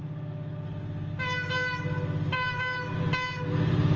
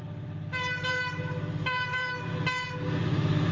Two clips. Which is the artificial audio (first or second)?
second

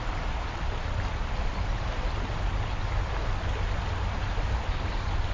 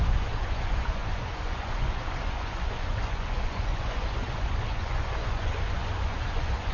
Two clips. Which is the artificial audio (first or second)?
second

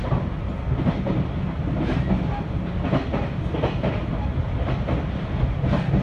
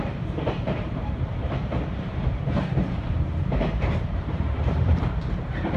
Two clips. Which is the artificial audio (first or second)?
second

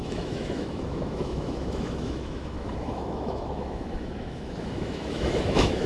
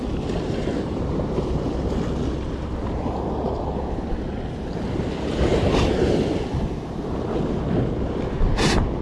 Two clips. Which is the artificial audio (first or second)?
first